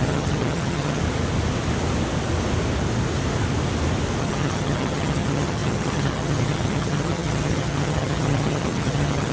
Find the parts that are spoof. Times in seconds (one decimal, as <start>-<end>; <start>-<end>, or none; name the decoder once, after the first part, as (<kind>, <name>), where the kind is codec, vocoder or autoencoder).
0.0-1.0 (vocoder, HiFi-GAN); 4.2-9.3